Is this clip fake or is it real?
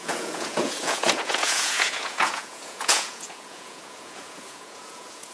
fake